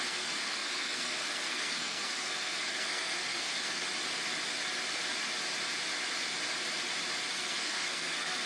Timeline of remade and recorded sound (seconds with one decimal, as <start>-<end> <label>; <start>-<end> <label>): 0.0-3.8 remade; 3.8-7.3 recorded; 7.3-8.5 remade